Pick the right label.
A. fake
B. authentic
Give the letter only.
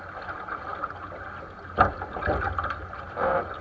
B